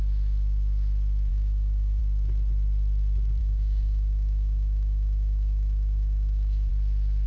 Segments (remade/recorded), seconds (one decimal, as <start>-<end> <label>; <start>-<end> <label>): 0.0-1.3 recorded; 1.3-2.0 remade; 2.0-3.4 recorded; 3.4-6.7 remade; 6.7-7.3 recorded